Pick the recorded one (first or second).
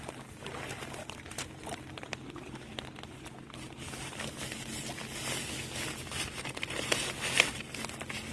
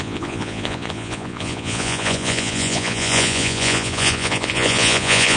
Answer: first